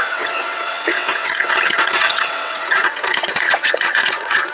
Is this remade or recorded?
remade